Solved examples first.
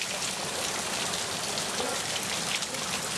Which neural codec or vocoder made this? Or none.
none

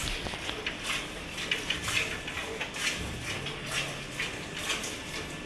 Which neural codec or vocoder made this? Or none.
none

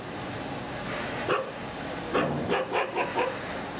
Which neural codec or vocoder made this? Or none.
none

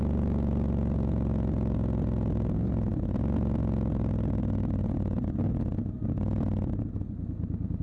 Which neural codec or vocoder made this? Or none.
none